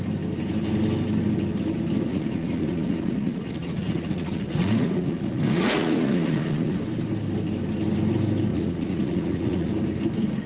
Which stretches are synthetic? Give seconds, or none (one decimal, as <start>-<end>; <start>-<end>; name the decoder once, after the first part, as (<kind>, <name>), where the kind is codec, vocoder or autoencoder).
2.1-6.8 (vocoder, Vocos); 8.5-9.7